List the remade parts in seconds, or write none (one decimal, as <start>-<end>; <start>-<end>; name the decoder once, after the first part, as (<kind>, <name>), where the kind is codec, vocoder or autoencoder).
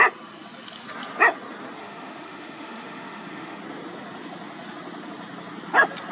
1.8-3.6 (autoencoder, DAC-VAE)